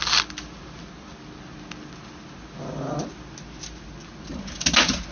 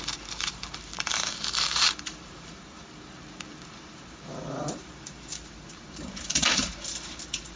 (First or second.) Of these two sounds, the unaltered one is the first